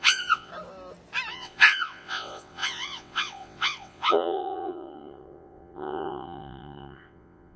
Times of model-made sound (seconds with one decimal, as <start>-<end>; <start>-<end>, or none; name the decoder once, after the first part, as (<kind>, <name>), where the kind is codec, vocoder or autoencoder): 0.0-0.5 (vocoder, WaveNeXt); 1.3-7.6